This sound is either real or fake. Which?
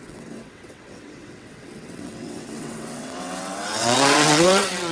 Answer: fake